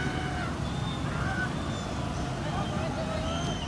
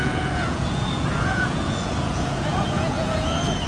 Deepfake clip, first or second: second